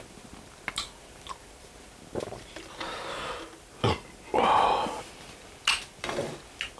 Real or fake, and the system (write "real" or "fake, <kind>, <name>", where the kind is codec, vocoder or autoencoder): real